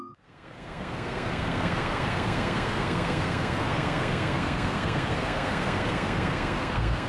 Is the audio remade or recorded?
remade